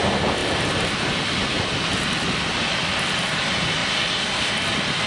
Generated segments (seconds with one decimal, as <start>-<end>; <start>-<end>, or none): none